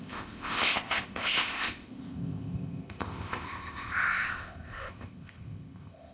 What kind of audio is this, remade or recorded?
remade